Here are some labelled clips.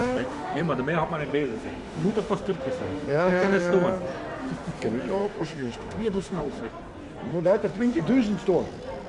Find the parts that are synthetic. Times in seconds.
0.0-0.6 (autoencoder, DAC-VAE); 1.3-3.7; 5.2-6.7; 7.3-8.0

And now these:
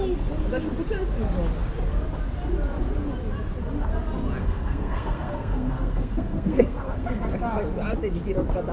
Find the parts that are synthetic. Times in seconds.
4.4-7.1 (codec, SNAC)

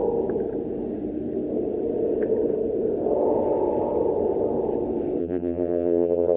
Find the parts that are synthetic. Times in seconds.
5.2-6.4 (vocoder, BigVGAN v2)

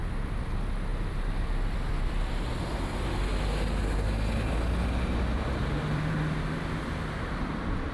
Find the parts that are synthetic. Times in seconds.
0.0-0.5 (vocoder, BigVGAN v2); 0.9-2.9; 5.3-6.1

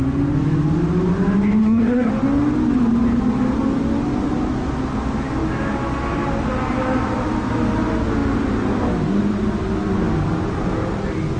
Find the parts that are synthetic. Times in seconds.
1.6-2.1 (codec, SNAC)